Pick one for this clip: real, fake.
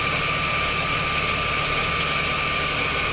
real